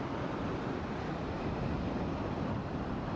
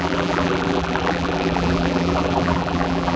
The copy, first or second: second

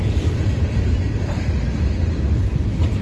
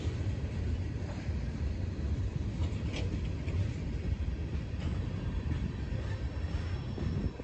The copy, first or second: second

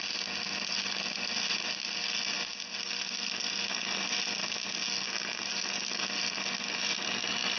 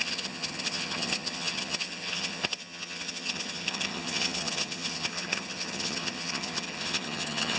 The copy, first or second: second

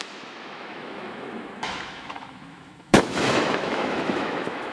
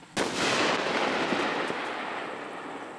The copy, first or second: first